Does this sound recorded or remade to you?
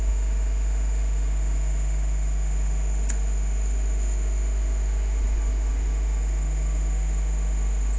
remade